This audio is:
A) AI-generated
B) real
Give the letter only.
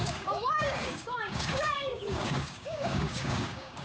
A